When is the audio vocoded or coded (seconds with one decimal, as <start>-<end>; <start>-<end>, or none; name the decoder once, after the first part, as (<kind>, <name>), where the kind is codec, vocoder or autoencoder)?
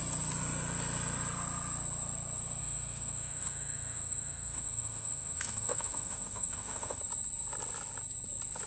2.6-7.0 (autoencoder, DAC-VAE)